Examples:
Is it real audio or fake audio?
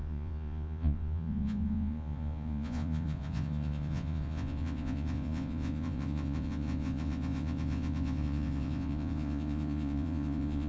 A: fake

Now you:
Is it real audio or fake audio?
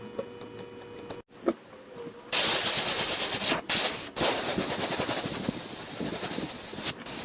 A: real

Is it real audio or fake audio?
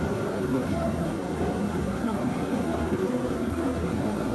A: fake